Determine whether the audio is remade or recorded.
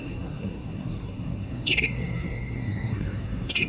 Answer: remade